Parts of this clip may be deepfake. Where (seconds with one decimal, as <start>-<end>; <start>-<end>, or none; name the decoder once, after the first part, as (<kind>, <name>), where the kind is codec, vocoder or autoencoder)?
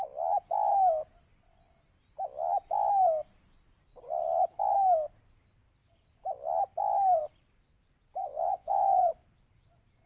8.2-9.1 (vocoder, Vocos)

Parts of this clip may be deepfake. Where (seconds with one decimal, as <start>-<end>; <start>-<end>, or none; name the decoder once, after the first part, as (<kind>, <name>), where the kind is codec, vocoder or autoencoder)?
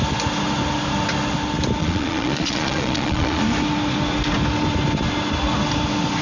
1.8-3.4 (vocoder, Vocos)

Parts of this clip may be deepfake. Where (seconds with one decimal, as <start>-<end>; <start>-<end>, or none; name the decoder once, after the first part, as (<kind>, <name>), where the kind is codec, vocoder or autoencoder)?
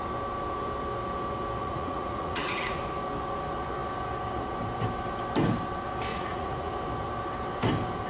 1.6-2.8 (vocoder, Vocos); 6.1-6.7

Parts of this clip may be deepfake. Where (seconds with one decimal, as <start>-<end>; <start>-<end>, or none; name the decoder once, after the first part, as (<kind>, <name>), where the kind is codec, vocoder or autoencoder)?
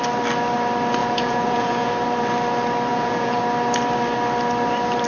1.0-1.9 (vocoder, Vocos); 2.9-3.4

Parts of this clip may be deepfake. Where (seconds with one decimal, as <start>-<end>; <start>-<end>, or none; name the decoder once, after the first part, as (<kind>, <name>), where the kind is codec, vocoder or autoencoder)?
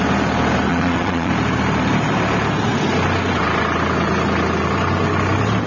0.7-1.3 (vocoder, Vocos)